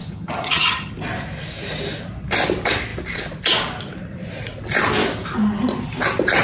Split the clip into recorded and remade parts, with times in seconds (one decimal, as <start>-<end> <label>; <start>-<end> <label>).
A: 0.0-0.9 remade; 0.9-6.4 recorded

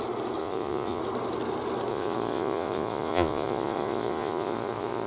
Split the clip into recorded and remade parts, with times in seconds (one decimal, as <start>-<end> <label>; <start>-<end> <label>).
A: 0.0-0.4 recorded; 0.4-1.0 remade; 1.0-1.9 recorded; 1.9-5.1 remade

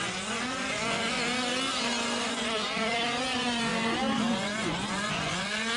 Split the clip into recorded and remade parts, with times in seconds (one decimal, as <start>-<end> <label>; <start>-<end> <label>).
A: 0.0-1.3 remade; 1.3-2.2 recorded; 2.2-5.8 remade

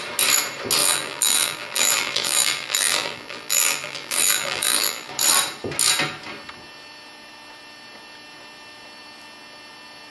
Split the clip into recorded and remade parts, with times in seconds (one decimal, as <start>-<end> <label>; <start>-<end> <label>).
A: 0.0-0.8 recorded; 0.8-5.1 remade; 5.1-10.1 recorded

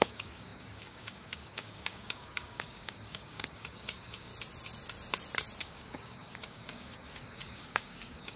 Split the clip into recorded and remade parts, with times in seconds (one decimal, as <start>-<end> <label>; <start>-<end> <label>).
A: 0.0-4.3 remade; 4.3-5.6 recorded; 5.6-8.4 remade

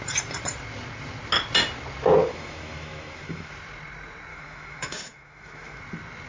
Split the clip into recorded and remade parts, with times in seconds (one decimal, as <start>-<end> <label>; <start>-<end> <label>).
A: 0.0-2.2 recorded; 2.2-3.5 remade; 3.5-4.3 recorded; 4.3-5.8 remade; 5.8-6.3 recorded